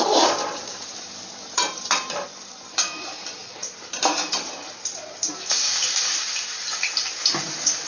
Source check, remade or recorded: remade